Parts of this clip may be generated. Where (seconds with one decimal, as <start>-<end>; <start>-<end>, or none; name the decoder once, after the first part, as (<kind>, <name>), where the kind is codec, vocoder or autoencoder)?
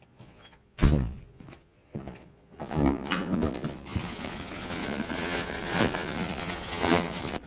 0.0-7.5 (vocoder, Vocos)